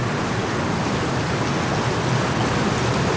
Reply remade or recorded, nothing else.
recorded